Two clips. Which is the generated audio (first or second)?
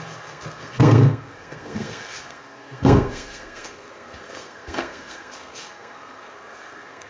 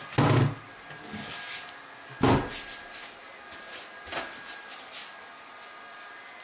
first